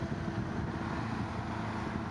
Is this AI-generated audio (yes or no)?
no